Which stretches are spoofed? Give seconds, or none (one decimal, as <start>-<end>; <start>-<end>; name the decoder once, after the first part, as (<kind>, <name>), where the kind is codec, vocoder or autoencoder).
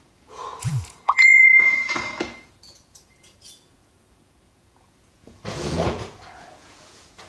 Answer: 0.0-7.3 (vocoder, Vocos)